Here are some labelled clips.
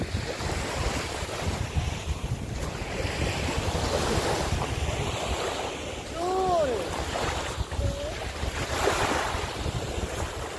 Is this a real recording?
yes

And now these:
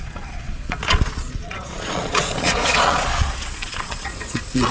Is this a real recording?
no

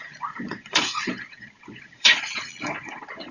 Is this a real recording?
no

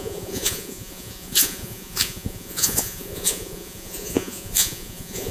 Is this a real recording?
no